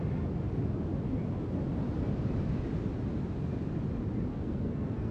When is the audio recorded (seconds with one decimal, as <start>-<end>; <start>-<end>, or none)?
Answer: 0.0-4.3